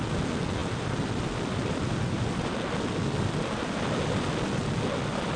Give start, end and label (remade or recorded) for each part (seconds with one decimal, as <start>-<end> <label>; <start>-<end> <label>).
0.0-0.6 recorded; 0.6-2.4 remade; 2.4-5.4 recorded